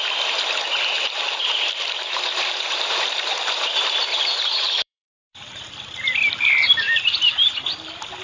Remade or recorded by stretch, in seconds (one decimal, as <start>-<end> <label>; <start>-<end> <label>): 0.0-0.7 recorded; 0.7-5.6 remade; 5.6-6.6 recorded; 6.6-7.7 remade; 7.7-8.2 recorded